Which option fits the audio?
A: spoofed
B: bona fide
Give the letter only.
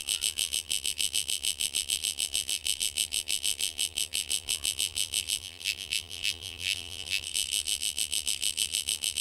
A